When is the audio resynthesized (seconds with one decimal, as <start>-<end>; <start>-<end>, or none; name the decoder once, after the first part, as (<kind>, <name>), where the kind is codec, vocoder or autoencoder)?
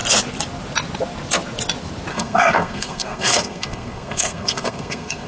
2.1-5.3 (codec, SNAC)